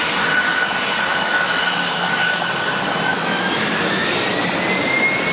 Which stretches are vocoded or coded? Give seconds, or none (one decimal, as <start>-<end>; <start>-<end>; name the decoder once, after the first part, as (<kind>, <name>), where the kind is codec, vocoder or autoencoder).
1.1-2.5 (autoencoder, DAC-VAE); 3.1-4.1